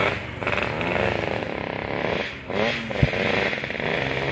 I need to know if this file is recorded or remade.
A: recorded